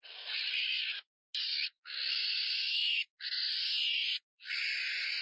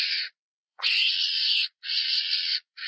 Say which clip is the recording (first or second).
first